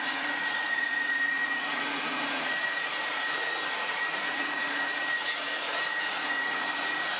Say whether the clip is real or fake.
fake